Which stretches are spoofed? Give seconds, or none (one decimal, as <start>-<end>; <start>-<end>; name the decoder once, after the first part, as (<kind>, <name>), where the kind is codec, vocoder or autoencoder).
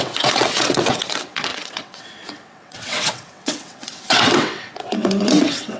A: 0.0-5.8 (vocoder, WaveNeXt)